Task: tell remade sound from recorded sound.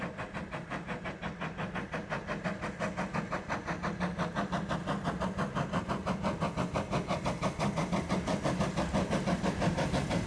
recorded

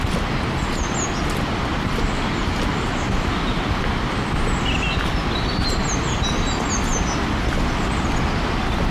recorded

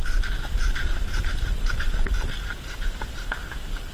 recorded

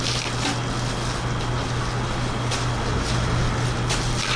recorded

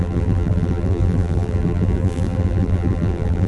remade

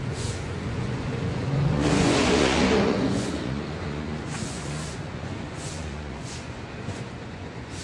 remade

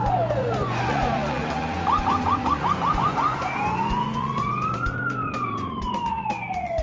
remade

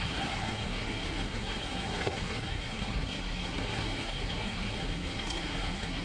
remade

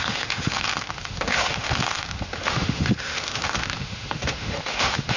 remade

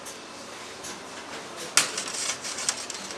recorded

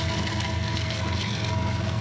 remade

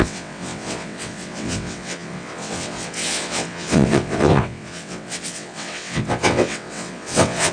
remade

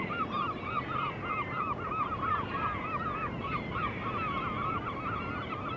recorded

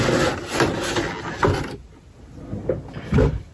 recorded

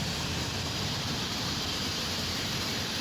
remade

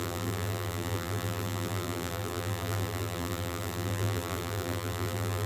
remade